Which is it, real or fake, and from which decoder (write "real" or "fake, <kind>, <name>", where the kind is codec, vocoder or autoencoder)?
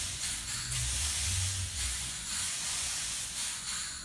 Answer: fake, vocoder, Vocos